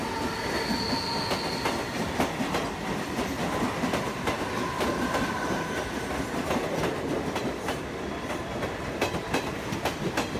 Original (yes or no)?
yes